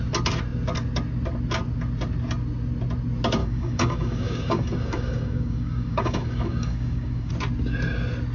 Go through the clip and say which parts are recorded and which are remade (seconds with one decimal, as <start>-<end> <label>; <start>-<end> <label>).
0.0-3.4 recorded; 3.4-7.3 remade; 7.3-8.3 recorded